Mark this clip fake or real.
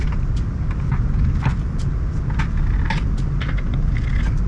real